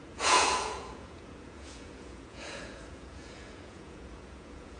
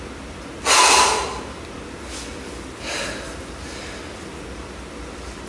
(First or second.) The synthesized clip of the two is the first